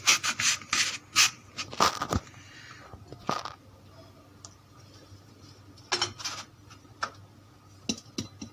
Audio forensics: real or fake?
real